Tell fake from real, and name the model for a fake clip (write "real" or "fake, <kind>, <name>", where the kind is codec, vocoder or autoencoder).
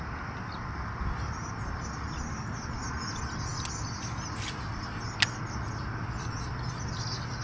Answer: real